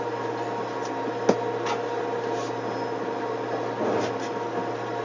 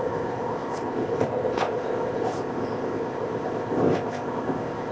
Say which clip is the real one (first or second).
first